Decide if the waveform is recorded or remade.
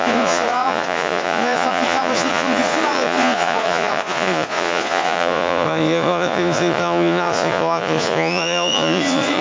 remade